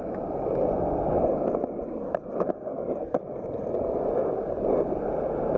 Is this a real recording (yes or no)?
yes